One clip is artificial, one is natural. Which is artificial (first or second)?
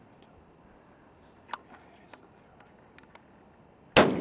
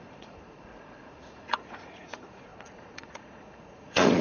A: second